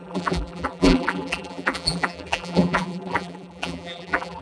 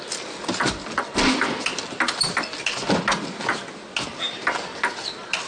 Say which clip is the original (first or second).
second